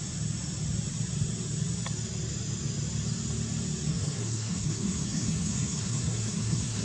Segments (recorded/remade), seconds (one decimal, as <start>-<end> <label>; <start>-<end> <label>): 0.0-3.9 recorded; 3.9-6.8 remade